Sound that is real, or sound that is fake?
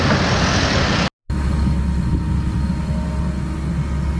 real